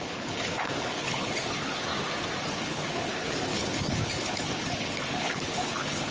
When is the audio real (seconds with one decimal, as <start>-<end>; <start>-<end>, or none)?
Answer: 1.9-2.5